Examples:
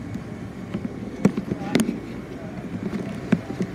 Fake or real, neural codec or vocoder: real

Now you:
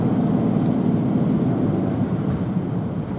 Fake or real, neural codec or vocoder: real